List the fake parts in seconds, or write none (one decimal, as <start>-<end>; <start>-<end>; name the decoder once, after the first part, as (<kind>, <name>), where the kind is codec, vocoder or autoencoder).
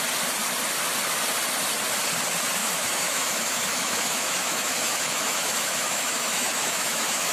2.6-7.3 (autoencoder, DAC-VAE)